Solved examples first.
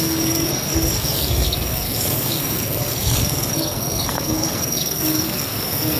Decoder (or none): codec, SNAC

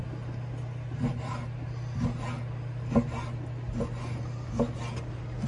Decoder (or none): none